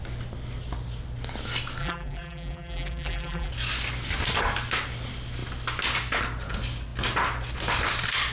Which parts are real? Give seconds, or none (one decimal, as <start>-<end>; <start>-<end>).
0.0-1.8; 3.5-8.3